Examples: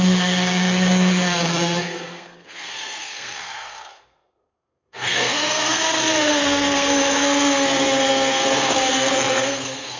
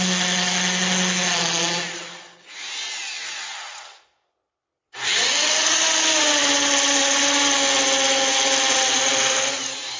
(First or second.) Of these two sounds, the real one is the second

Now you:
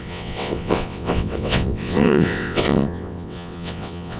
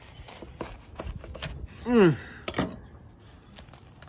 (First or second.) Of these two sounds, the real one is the second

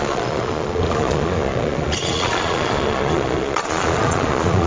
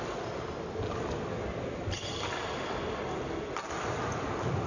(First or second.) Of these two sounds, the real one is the second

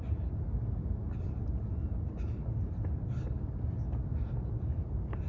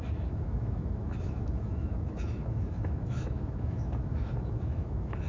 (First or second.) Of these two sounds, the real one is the first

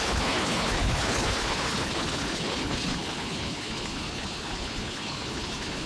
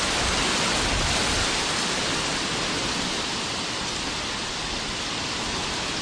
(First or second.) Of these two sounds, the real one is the second